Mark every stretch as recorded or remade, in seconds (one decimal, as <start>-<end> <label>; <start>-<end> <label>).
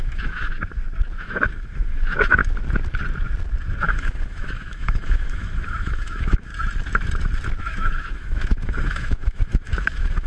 0.0-0.5 remade; 0.5-1.2 recorded; 1.2-2.4 remade; 2.4-3.8 recorded; 3.8-6.5 remade; 6.5-7.6 recorded; 7.6-10.3 remade